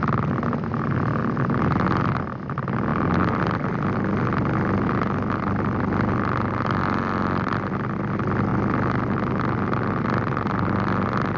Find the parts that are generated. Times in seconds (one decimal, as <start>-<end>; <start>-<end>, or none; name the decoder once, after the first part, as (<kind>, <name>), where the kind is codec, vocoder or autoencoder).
none